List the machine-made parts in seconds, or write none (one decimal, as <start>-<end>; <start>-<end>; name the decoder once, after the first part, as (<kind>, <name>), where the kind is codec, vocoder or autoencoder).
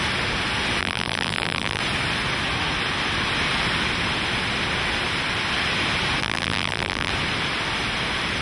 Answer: 0.8-1.8 (vocoder, BigVGAN v2); 6.2-7.1